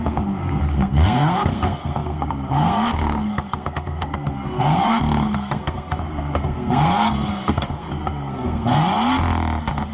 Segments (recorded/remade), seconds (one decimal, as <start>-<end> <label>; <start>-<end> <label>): 0.0-8.9 remade; 8.9-9.9 recorded